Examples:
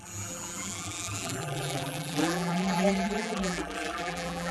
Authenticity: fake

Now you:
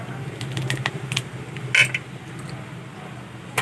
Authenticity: real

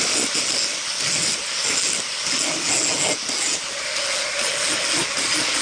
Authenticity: real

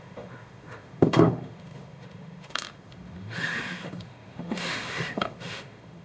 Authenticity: fake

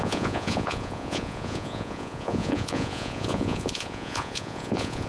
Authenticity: fake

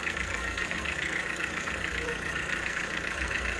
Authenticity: fake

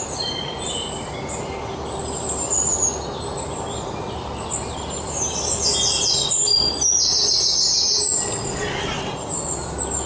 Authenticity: real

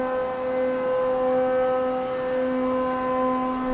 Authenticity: real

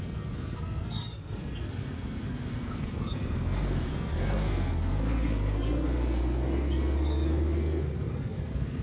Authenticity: fake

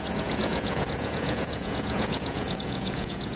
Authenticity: fake